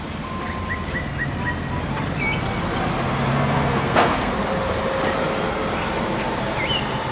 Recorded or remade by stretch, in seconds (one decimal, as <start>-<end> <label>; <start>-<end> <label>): 0.0-3.3 recorded; 3.3-4.3 remade; 4.3-7.1 recorded